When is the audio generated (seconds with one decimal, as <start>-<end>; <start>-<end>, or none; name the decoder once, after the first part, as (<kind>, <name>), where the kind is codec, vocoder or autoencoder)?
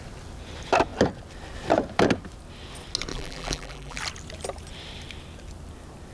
3.1-4.0 (vocoder, BigVGAN v2)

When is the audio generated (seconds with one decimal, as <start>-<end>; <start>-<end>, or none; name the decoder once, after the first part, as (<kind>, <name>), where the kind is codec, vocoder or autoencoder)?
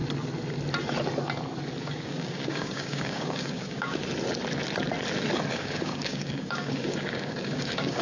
1.8-4.0 (codec, DAC); 5.5-8.0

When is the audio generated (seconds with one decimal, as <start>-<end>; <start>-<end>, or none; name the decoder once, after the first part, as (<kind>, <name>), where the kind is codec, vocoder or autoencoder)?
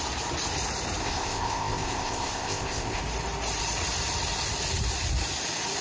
1.0-3.0 (codec, ZipCodec)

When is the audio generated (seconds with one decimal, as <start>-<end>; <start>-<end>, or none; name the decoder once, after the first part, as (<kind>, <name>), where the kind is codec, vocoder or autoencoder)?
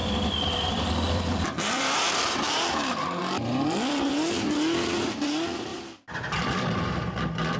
0.0-2.4 (vocoder, BigVGAN v2); 3.2-4.1; 5.7-6.8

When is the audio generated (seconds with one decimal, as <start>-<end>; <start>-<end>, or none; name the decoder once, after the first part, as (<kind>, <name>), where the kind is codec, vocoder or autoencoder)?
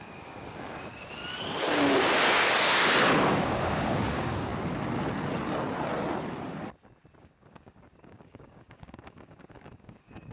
0.0-1.2 (codec, DAC); 3.2-4.5; 7.2-10.3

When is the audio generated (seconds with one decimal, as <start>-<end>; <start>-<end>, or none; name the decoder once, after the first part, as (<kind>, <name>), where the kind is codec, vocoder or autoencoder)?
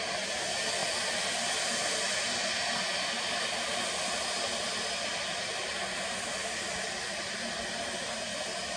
none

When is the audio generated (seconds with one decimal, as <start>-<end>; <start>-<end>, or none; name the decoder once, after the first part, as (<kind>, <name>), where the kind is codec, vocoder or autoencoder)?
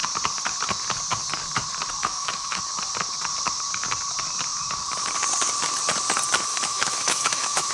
2.0-2.6 (autoencoder, DAC-VAE); 6.5-7.7